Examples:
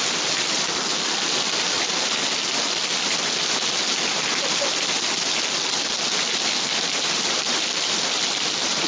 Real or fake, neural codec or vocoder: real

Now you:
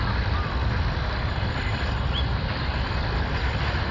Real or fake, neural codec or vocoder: real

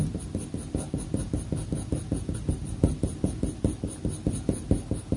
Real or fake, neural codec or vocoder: real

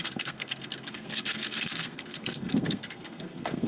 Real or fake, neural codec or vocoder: fake, codec, SNAC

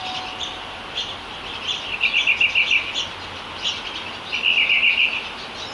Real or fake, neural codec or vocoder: real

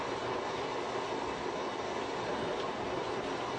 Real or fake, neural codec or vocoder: real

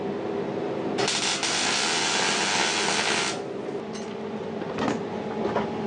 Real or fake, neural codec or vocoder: real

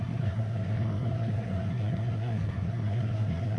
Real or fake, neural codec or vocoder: fake, codec, SNAC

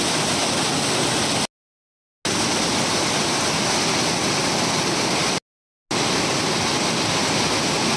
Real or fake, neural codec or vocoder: real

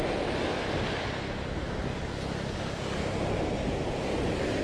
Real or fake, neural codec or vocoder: real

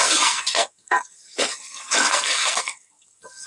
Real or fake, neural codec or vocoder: fake, codec, SNAC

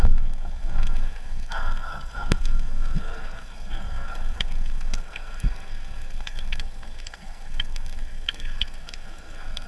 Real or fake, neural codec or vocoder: fake, codec, SNAC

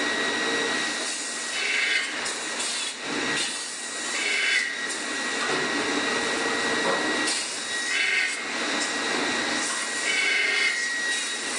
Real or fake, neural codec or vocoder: real